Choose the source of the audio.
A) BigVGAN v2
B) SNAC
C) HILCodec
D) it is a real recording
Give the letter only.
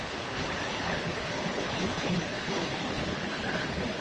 C